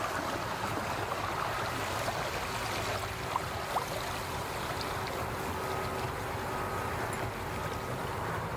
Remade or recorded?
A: recorded